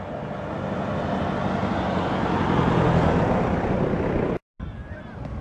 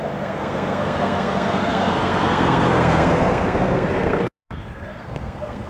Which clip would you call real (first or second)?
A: first